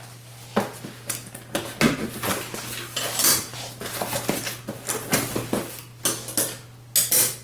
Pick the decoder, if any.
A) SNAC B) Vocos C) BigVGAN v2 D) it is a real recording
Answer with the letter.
D